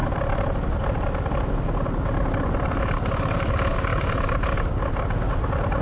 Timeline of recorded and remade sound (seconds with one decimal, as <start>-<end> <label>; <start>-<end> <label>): 0.0-5.8 recorded